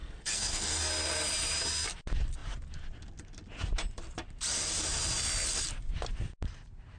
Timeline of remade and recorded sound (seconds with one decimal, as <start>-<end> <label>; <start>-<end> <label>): 0.0-0.9 remade; 0.9-7.0 recorded

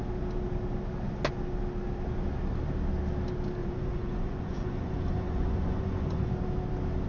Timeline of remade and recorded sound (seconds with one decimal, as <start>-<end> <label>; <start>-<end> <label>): 0.0-3.6 recorded; 3.6-6.3 remade; 6.3-7.1 recorded

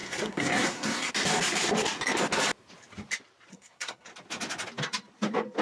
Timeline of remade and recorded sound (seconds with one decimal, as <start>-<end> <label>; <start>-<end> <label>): 0.0-1.1 remade; 1.1-3.5 recorded; 3.5-4.1 remade; 4.1-5.6 recorded

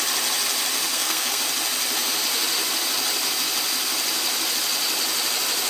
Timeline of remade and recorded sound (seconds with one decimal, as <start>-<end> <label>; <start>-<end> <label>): 0.0-0.9 recorded; 0.9-1.4 remade; 1.4-5.7 recorded

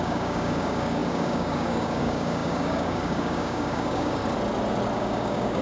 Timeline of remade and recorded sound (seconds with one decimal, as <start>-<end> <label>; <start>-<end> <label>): 0.0-4.2 remade; 4.2-4.9 recorded; 4.9-5.6 remade